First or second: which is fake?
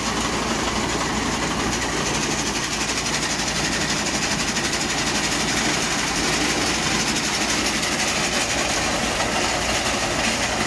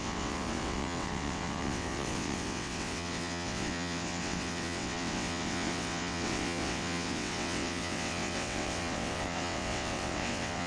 second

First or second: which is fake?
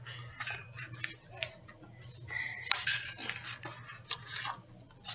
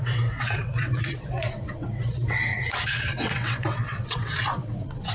second